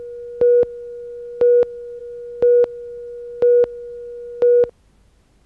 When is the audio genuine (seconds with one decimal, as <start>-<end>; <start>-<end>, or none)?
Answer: 0.0-5.5

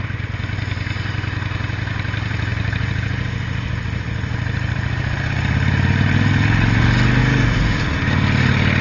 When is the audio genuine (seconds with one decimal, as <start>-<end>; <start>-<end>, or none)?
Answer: 0.0-2.5; 6.8-7.2; 7.8-8.8